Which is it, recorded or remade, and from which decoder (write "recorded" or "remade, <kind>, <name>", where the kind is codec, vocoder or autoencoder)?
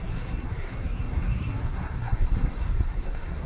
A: remade, codec, SNAC